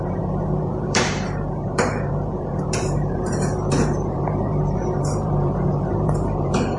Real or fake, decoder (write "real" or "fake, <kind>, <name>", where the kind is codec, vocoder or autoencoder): fake, vocoder, BigVGAN v2